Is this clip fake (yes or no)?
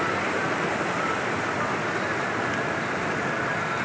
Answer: no